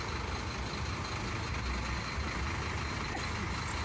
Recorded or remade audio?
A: recorded